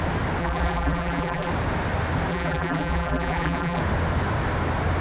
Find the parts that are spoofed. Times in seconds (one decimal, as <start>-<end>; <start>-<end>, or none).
0.4-1.5; 2.3-3.8